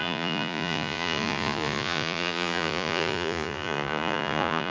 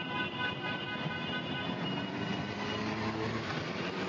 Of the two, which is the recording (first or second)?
second